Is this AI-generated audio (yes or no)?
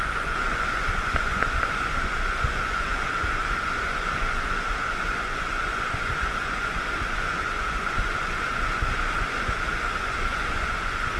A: yes